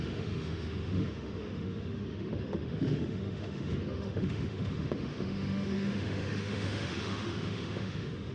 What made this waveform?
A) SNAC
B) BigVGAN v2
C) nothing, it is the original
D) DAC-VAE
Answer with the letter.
D